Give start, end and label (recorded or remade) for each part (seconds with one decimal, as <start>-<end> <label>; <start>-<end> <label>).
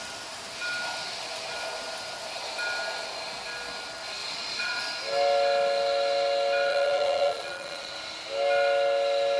0.0-4.2 recorded; 4.2-4.8 remade; 4.8-6.7 recorded; 6.7-7.9 remade; 7.9-9.4 recorded